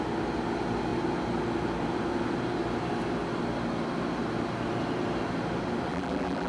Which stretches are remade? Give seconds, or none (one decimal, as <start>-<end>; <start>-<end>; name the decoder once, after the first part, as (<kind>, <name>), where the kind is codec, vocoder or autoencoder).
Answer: 5.9-6.5 (vocoder, BigVGAN v2)

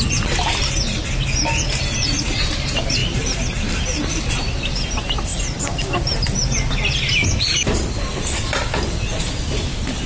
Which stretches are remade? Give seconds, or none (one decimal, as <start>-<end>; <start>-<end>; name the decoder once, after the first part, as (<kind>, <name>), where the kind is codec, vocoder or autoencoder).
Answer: 0.0-3.0 (vocoder, BigVGAN v2); 3.6-5.3; 9.2-10.1

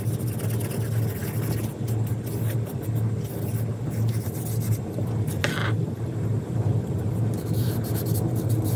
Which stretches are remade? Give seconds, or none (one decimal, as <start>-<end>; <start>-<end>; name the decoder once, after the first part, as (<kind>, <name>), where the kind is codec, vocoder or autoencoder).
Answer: 5.6-7.7 (vocoder, BigVGAN v2)

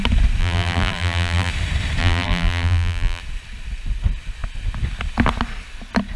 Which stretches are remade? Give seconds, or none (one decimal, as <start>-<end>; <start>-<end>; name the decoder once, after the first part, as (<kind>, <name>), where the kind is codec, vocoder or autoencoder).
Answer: 0.4-1.5 (vocoder, BigVGAN v2); 2.0-3.2